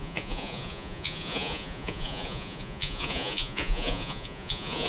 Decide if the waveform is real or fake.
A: fake